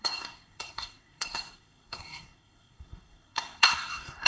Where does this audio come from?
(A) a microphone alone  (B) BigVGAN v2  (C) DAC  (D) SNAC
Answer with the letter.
D